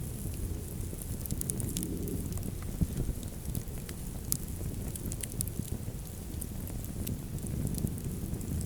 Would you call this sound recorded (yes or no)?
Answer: yes